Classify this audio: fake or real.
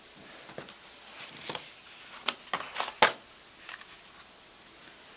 real